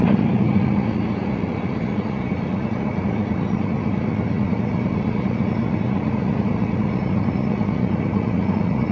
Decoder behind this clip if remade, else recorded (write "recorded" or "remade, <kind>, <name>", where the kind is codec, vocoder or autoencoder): remade, vocoder, Vocos